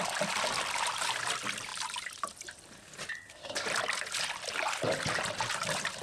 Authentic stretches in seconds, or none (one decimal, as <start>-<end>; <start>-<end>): 0.0-6.0